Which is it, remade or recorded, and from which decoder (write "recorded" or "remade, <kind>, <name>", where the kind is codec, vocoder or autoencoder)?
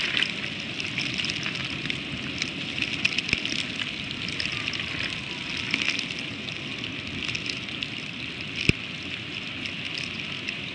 recorded